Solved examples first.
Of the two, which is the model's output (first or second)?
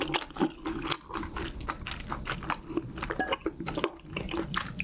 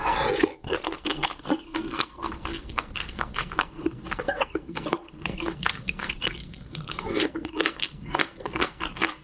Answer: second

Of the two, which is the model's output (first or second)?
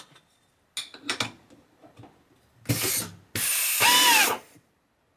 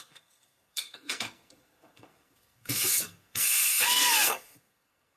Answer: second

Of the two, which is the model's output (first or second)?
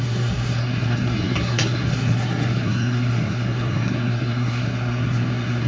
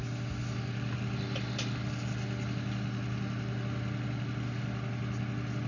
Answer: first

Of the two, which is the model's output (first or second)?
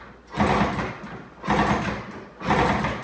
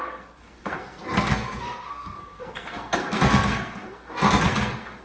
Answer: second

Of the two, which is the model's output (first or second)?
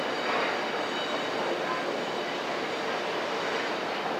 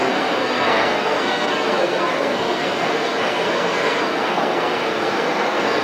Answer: second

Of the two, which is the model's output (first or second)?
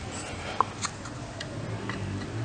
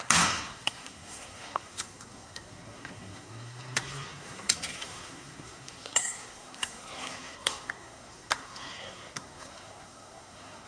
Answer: second